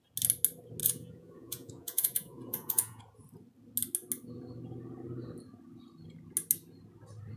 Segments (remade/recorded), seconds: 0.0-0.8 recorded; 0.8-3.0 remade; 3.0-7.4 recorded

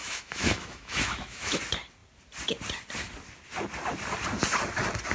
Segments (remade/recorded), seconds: 0.0-1.6 remade; 1.6-5.1 recorded